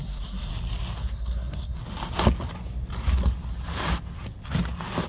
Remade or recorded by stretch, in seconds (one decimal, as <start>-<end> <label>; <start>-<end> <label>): 0.0-0.5 remade; 0.5-1.0 recorded; 1.0-1.8 remade; 1.8-5.1 recorded